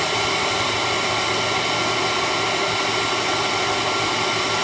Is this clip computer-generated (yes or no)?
no